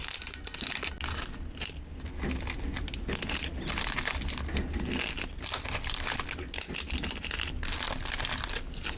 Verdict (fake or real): real